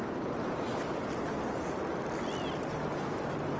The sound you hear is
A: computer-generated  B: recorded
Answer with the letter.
B